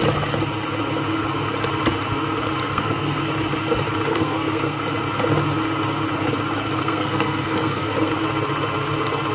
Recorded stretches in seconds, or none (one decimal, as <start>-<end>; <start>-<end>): 0.0-2.6; 3.2-4.1; 4.8-6.8; 8.1-9.3